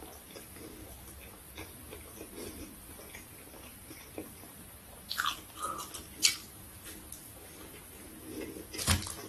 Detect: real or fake real